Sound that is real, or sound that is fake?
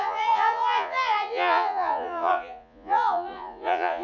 fake